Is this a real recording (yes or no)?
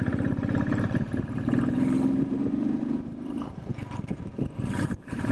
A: no